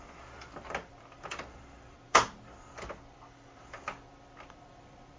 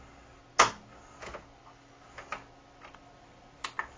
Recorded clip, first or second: second